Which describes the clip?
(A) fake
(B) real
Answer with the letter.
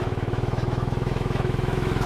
A